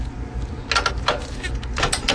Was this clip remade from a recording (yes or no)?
no